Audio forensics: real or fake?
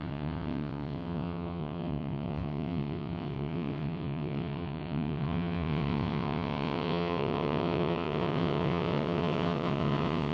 fake